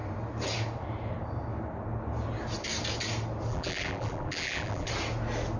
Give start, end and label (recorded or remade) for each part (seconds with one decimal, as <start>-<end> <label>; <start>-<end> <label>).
0.0-3.5 recorded; 3.5-4.9 remade; 4.9-5.6 recorded

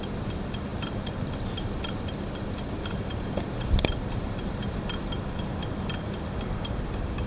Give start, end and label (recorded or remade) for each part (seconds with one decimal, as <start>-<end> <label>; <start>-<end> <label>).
0.0-0.7 recorded; 0.7-5.1 remade; 5.1-7.3 recorded

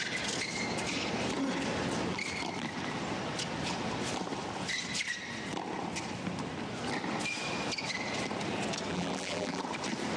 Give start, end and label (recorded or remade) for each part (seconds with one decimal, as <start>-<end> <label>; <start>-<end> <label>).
0.0-8.9 recorded; 8.9-9.6 remade; 9.6-10.2 recorded

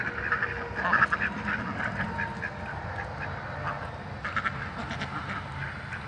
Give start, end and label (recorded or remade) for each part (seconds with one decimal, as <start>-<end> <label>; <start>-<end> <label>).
0.0-6.1 recorded

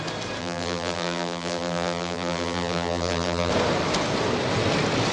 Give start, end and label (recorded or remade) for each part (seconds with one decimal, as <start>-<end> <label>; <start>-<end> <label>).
0.0-0.4 recorded; 0.4-3.5 remade; 3.5-5.1 recorded